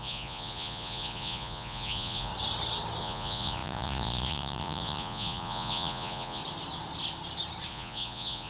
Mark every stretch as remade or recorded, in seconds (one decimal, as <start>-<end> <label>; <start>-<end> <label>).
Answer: 0.0-2.3 remade; 2.3-3.0 recorded; 3.0-6.4 remade; 6.4-7.7 recorded; 7.7-8.5 remade